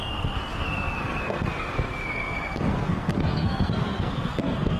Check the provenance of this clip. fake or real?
fake